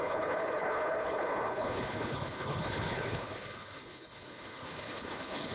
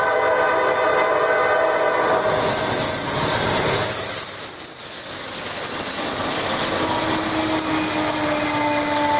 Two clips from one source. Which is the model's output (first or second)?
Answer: first